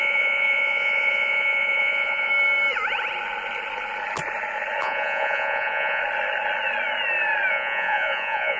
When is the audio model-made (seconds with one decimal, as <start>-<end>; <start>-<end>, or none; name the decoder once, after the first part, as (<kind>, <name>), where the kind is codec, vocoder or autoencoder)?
0.0-2.3 (vocoder, Vocos); 4.8-6.0; 7.5-8.6